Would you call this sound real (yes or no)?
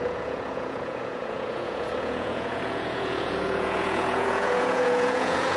no